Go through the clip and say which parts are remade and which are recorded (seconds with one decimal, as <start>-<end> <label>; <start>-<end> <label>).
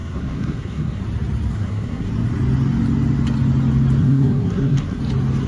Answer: 0.0-1.0 remade; 1.0-1.5 recorded; 1.5-2.1 remade; 2.1-4.0 recorded; 4.0-5.0 remade; 5.0-5.5 recorded